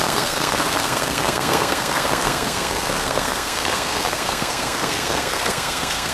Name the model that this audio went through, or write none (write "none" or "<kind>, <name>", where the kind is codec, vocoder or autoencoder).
codec, SNAC